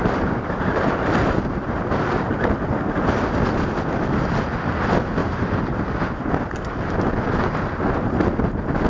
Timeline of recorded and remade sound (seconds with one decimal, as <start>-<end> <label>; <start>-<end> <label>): 0.0-2.0 remade; 2.0-5.2 recorded; 5.2-5.7 remade; 5.7-8.9 recorded